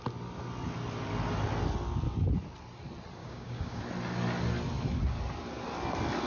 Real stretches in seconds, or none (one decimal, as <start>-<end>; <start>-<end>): 0.0-3.2; 3.8-6.3